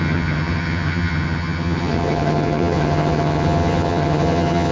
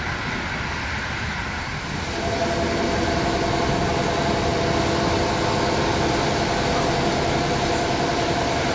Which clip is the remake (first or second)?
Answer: first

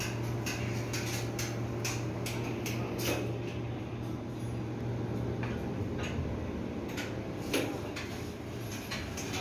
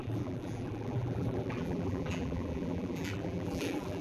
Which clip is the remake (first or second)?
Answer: second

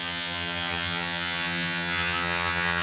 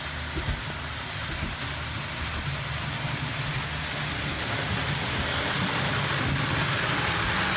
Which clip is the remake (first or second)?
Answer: first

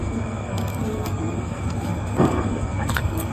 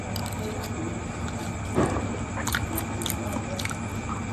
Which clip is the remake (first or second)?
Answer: first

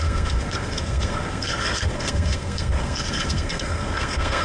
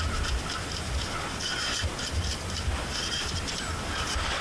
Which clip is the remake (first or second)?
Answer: first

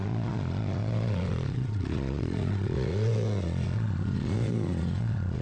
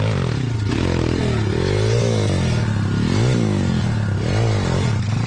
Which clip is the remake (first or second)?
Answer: first